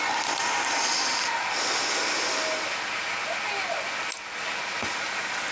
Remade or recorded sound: recorded